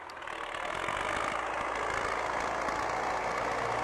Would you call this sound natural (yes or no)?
yes